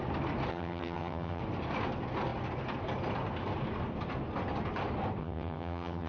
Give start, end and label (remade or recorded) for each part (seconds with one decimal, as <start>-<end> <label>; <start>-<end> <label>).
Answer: 0.0-0.5 recorded; 0.5-1.4 remade; 1.4-5.2 recorded; 5.2-6.1 remade